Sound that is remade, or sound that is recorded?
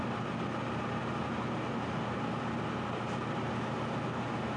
recorded